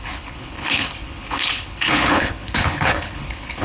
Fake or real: fake